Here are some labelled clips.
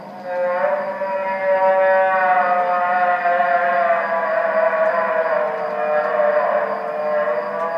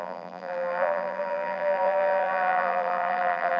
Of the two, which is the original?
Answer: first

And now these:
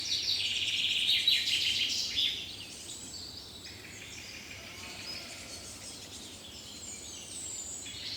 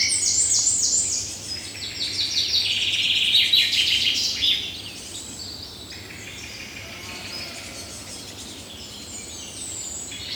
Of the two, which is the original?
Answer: second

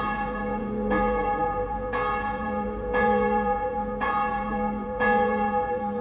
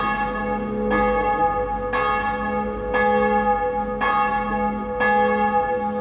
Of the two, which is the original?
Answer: second